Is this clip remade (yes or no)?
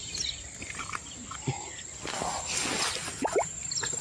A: no